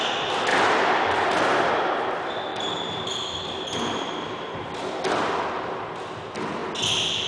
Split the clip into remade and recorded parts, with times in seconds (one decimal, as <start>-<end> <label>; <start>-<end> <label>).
0.0-0.5 recorded; 0.5-1.7 remade; 1.7-2.5 recorded; 2.5-5.4 remade; 5.4-7.3 recorded